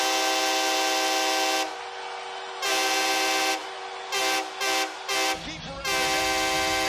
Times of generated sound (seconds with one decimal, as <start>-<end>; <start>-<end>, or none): none